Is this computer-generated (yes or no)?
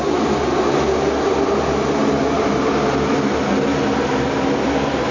no